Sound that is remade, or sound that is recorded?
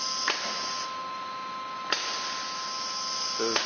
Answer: recorded